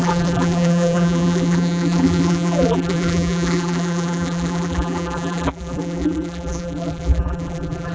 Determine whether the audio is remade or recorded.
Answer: remade